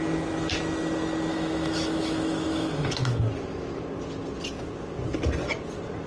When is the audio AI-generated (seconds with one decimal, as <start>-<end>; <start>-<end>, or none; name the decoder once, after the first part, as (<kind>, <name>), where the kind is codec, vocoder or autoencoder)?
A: 1.3-3.2 (autoencoder, DAC-VAE)